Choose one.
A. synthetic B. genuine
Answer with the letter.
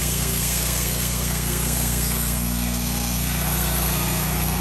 A